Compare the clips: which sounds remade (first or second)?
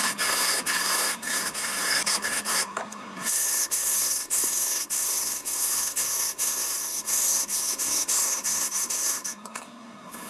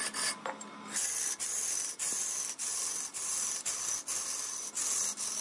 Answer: first